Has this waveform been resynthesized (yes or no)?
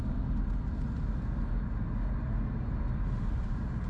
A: no